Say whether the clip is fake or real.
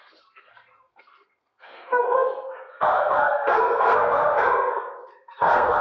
fake